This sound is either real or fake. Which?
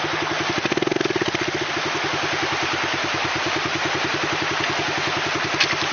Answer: real